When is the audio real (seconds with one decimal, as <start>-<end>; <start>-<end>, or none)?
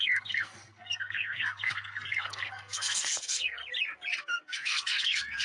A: 3.6-4.2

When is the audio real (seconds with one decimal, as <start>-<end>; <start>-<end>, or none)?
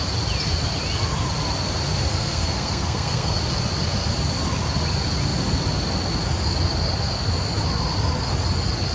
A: 0.0-2.1; 3.4-8.9